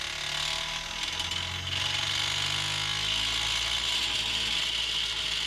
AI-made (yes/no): no